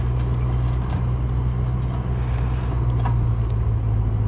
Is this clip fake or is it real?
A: real